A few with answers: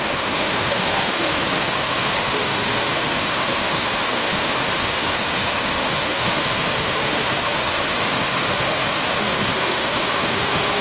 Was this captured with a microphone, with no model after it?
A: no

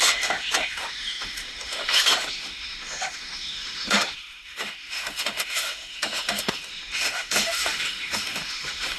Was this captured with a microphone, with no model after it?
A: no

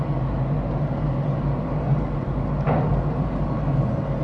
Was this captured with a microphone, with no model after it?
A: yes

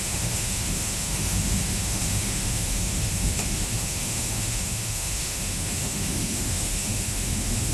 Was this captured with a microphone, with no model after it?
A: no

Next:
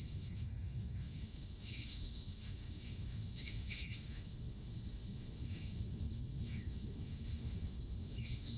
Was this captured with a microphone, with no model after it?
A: no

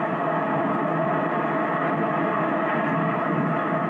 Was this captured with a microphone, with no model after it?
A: yes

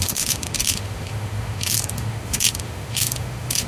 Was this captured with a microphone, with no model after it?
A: no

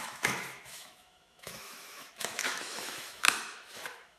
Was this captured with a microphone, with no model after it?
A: no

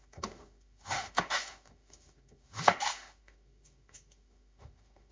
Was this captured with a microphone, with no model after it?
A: no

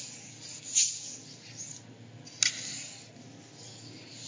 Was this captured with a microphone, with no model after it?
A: yes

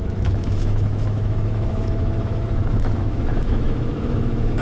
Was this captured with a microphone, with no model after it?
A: no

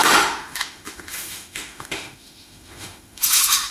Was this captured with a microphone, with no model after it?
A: no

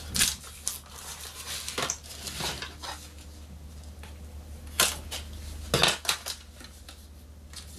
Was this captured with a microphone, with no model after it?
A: yes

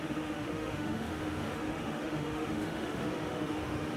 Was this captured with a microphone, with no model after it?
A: no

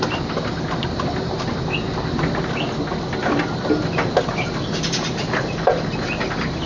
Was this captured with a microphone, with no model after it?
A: yes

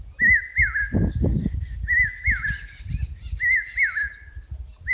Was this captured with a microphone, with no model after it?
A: yes